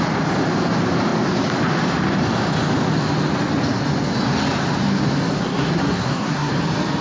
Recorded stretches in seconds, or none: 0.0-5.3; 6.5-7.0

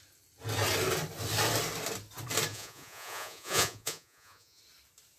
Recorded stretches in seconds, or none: 0.0-2.5; 4.6-5.2

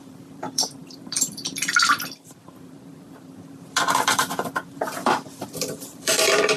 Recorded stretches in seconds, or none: none

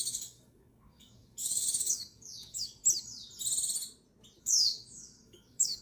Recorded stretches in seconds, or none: 2.8-4.4